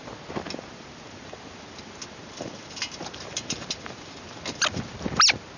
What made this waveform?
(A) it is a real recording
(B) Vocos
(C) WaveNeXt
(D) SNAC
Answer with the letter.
A